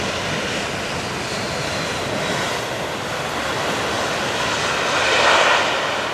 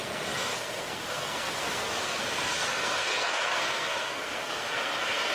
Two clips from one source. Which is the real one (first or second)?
first